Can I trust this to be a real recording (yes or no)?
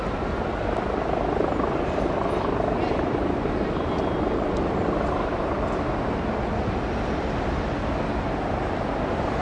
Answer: yes